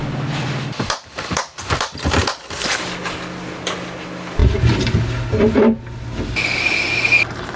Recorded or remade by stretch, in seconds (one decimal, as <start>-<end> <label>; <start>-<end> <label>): 0.0-7.6 remade